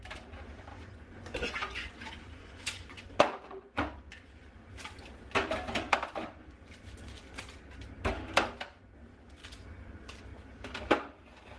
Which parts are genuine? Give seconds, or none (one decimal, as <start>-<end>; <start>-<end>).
0.0-0.7; 4.7-11.6